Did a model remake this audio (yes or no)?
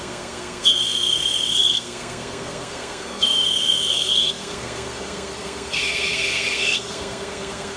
yes